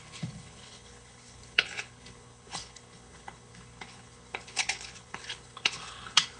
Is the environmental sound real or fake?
fake